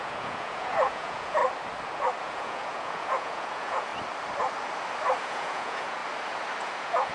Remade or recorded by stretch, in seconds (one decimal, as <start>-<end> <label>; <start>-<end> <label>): 0.0-1.4 remade; 1.4-2.2 recorded; 2.2-3.9 remade; 3.9-5.2 recorded; 5.2-6.0 remade; 6.0-6.6 recorded; 6.6-7.1 remade